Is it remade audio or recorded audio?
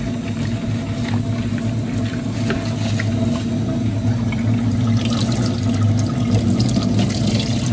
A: recorded